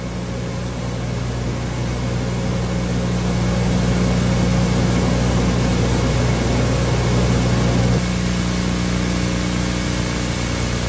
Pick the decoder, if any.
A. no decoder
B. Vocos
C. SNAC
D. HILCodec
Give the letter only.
A